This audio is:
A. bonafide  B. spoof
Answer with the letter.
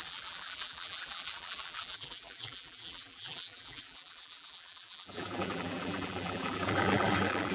B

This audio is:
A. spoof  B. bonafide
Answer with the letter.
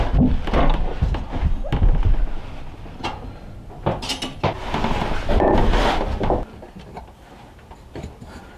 B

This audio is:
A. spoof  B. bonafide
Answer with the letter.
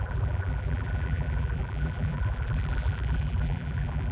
A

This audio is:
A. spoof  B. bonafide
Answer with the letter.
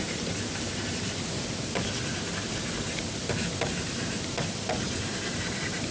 A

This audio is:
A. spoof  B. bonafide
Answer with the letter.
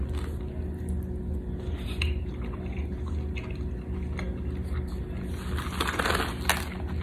B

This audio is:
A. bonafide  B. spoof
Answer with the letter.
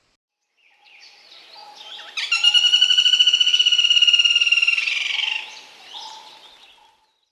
A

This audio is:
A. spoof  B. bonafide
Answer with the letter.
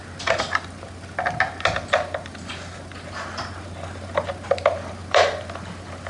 B